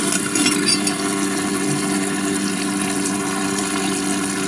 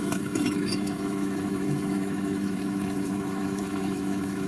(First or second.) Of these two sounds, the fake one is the second